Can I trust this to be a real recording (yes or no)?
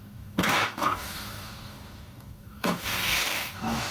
no